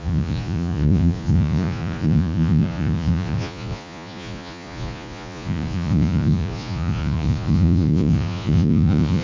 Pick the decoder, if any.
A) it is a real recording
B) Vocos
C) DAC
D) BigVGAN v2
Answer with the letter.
B